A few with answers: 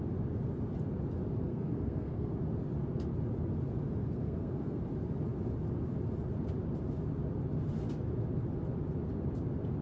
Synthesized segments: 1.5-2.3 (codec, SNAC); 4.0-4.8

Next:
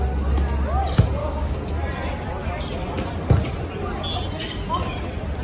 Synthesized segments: 1.2-1.7 (codec, DAC)

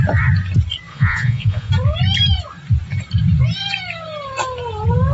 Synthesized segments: 0.9-1.7 (vocoder, Vocos)

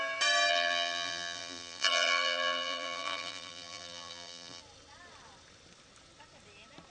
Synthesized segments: 0.5-4.6 (vocoder, BigVGAN v2)

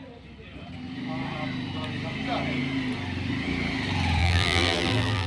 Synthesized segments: 4.2-5.3 (vocoder, BigVGAN v2)

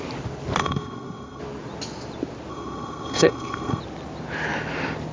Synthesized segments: 0.6-1.4 (codec, SNAC); 2.5-3.8